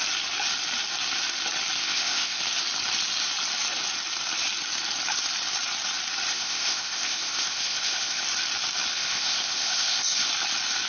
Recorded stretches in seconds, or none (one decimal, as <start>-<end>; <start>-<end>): 0.0-1.8; 2.4-6.3; 8.2-8.9; 10.3-10.9